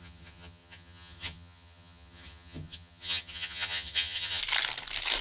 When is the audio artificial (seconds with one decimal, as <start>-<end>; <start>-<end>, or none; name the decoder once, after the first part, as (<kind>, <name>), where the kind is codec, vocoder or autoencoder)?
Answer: 0.0-4.4 (vocoder, HiFi-GAN)